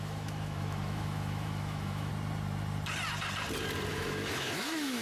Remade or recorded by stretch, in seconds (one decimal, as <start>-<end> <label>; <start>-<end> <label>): 0.0-2.1 remade; 2.1-3.9 recorded; 3.9-5.0 remade